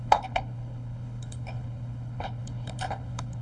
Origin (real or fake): fake